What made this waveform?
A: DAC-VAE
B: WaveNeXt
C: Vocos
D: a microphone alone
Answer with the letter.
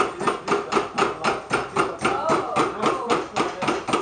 D